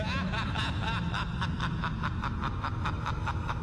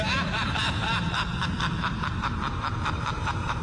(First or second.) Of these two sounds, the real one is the first